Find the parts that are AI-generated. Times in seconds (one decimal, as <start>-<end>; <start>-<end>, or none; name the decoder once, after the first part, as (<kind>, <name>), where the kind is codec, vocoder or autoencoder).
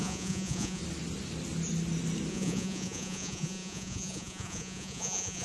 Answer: 0.0-0.8 (vocoder, Vocos); 2.3-5.4